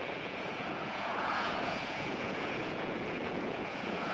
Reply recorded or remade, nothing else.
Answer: remade